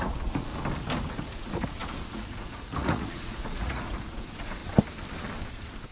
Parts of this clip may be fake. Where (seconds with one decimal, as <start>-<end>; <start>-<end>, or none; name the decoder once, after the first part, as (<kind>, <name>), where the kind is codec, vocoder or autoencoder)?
0.0-0.5 (vocoder, Vocos); 1.1-4.6; 5.5-5.9